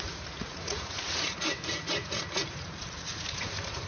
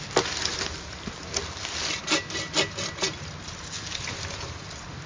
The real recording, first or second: second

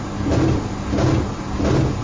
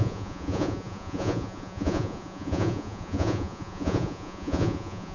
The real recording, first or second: first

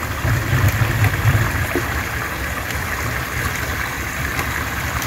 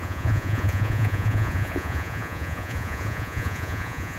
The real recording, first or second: first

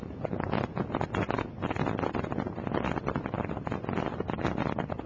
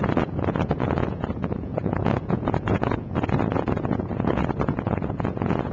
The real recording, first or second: first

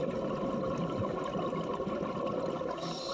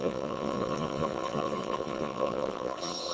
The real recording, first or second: first